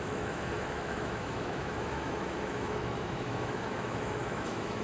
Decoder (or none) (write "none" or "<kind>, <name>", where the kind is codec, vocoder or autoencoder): autoencoder, DAC-VAE